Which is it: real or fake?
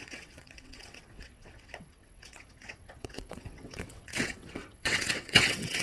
fake